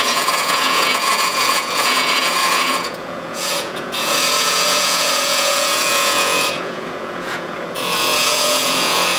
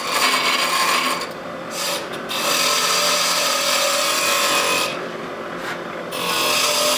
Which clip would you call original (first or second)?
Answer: second